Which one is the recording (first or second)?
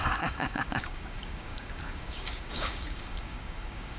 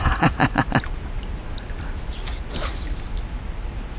second